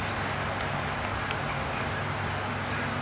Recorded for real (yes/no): yes